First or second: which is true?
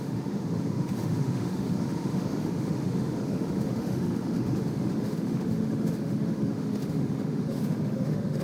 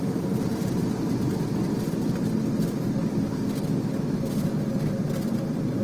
second